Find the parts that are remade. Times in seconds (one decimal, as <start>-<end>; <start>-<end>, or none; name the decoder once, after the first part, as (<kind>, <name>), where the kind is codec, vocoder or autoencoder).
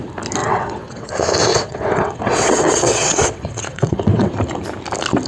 0.4-1.1 (vocoder, WaveNeXt); 1.5-4.3